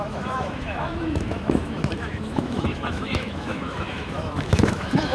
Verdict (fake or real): fake